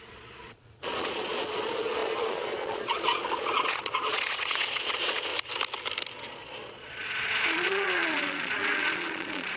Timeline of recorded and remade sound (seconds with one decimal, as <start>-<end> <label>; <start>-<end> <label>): 0.0-5.3 remade; 5.3-6.2 recorded; 6.2-9.6 remade

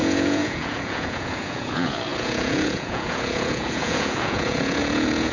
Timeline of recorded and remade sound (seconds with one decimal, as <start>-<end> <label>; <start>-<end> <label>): 0.0-5.3 remade

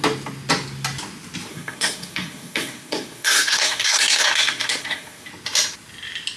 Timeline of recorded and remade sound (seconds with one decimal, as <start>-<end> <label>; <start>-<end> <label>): 0.0-1.5 recorded; 1.5-5.3 remade; 5.3-6.4 recorded

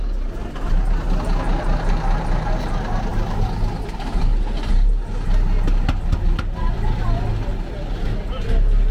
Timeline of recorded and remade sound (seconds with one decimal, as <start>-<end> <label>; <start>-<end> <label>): 0.0-8.9 recorded

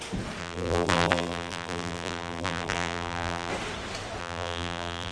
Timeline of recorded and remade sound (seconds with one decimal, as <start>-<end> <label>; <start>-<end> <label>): 0.0-0.4 recorded; 0.4-3.5 remade; 3.5-4.2 recorded; 4.2-5.1 remade

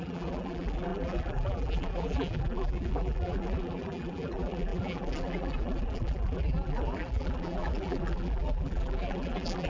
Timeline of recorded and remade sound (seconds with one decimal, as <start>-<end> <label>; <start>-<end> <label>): 0.0-9.7 remade